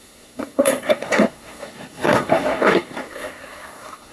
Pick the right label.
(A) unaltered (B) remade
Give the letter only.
B